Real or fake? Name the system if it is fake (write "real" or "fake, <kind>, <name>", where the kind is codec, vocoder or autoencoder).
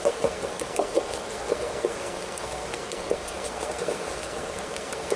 fake, codec, SNAC